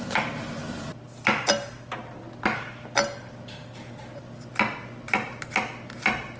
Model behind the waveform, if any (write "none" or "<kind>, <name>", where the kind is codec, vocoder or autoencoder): none